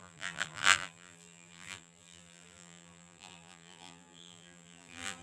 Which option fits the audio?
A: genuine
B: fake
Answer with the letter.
B